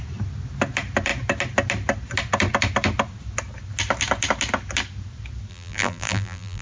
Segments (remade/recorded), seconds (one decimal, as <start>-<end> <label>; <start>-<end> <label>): 0.0-5.5 recorded; 5.5-6.6 remade